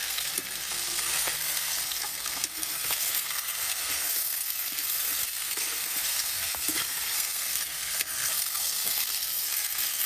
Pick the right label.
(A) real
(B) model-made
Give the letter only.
B